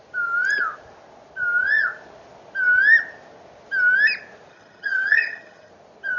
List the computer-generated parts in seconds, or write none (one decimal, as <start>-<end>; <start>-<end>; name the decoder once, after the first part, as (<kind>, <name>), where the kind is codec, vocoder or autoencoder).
4.5-5.7 (vocoder, HiFi-GAN)